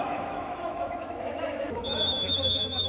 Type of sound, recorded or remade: remade